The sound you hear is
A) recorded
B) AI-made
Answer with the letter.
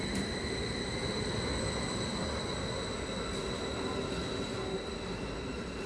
A